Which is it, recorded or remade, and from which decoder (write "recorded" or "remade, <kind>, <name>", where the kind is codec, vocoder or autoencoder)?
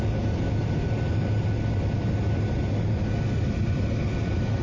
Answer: recorded